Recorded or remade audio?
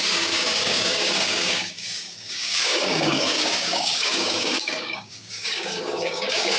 remade